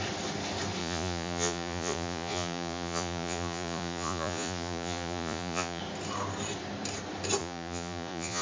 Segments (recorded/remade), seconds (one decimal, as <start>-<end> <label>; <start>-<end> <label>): 0.0-0.8 recorded; 0.8-5.8 remade; 5.8-7.4 recorded; 7.4-8.4 remade